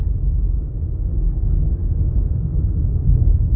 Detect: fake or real fake